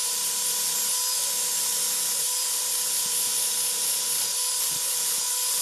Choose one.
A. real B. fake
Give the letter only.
A